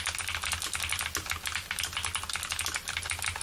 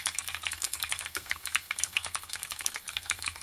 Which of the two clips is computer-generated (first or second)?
second